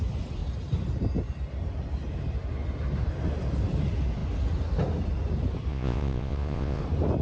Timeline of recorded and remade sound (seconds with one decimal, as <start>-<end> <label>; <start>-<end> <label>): 0.0-5.7 recorded; 5.7-6.8 remade; 6.8-7.2 recorded

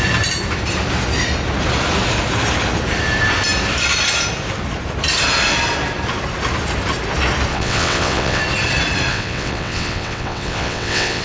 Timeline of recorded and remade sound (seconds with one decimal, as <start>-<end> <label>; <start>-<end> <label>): 0.0-7.5 recorded; 7.5-8.4 remade; 8.4-9.1 recorded; 9.1-11.2 remade

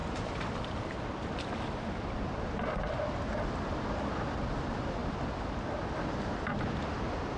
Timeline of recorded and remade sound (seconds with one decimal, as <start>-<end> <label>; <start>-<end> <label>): 0.0-7.4 recorded

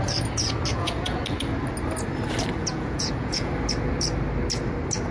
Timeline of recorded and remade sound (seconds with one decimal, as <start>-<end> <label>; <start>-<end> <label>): 0.0-0.7 recorded; 0.7-1.2 remade; 1.2-2.6 recorded; 2.6-3.5 remade; 3.5-5.1 recorded